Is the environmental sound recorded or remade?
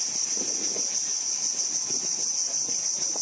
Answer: remade